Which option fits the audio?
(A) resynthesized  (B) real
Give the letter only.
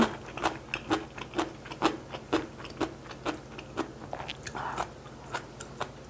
B